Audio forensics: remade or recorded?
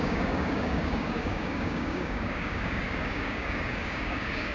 remade